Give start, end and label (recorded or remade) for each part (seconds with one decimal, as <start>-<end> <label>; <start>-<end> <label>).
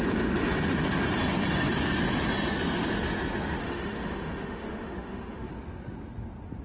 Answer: 0.0-3.6 recorded; 3.6-5.5 remade; 5.5-6.6 recorded